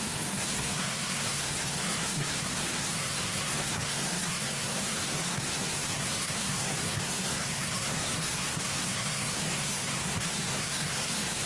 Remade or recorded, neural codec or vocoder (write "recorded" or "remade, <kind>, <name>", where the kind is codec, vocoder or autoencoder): remade, codec, SNAC